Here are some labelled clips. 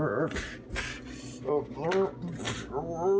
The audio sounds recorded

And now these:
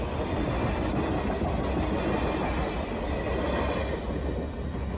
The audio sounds recorded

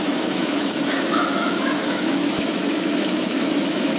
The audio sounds remade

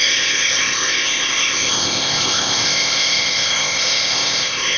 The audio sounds remade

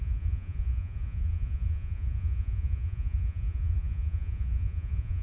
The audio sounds remade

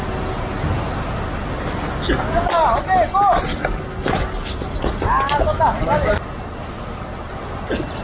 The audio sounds recorded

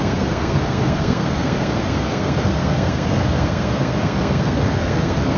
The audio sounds remade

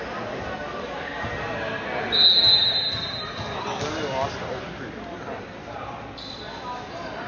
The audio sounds recorded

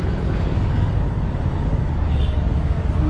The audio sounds remade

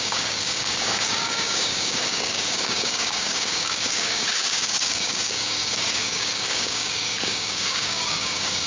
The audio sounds remade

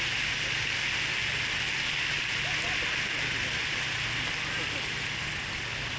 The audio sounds recorded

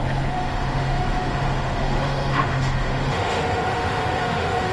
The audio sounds remade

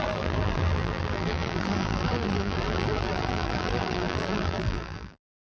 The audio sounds remade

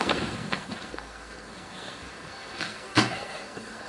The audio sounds remade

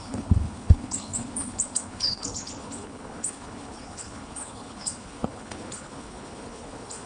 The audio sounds remade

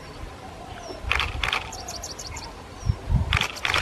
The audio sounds remade